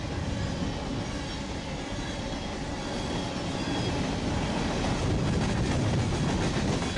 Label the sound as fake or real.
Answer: real